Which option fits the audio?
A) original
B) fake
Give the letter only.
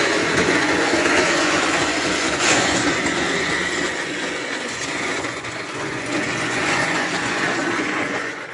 B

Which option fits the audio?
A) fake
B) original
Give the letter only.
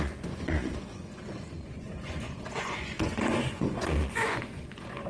A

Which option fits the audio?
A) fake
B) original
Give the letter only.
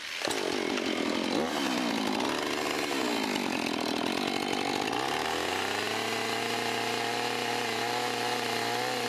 B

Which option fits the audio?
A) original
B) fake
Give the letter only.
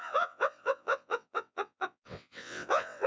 B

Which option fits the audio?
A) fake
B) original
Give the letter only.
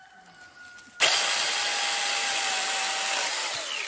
B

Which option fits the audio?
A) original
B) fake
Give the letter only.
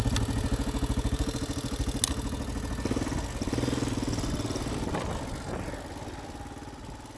A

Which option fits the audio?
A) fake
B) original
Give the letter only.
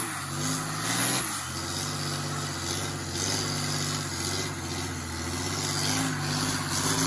B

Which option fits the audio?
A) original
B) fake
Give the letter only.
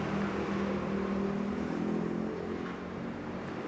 A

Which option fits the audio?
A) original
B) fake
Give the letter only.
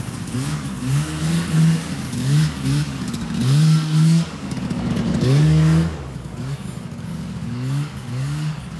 B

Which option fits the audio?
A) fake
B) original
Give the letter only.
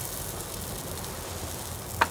B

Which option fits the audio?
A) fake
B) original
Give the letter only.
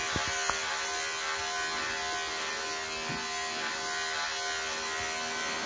B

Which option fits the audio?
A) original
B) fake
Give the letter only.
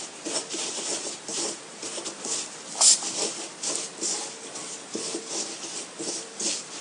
A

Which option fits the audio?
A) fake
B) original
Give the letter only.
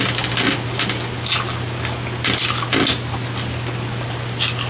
B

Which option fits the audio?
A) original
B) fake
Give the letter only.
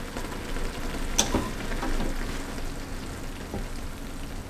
A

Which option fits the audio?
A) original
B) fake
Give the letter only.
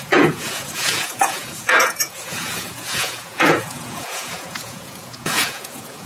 B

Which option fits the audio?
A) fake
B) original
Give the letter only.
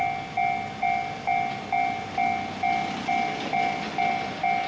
B